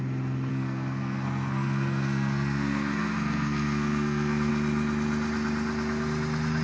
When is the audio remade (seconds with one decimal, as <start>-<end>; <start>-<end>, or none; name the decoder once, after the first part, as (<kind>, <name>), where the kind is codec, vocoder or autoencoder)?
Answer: 0.5-4.5 (codec, SNAC)